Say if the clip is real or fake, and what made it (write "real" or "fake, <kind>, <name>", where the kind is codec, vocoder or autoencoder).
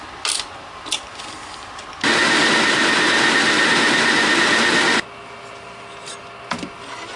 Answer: real